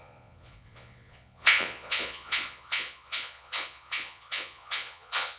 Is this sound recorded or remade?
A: remade